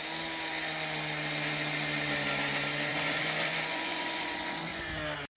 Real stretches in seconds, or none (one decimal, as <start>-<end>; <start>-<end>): 0.0-2.9; 4.9-5.4